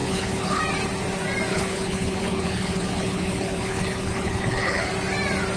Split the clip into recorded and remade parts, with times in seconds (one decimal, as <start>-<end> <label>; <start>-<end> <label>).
0.0-0.6 remade; 0.6-1.5 recorded; 1.5-4.9 remade; 4.9-5.6 recorded